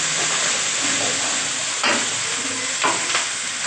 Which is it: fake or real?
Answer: real